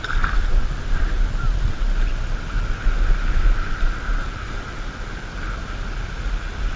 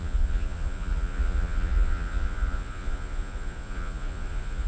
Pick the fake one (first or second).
second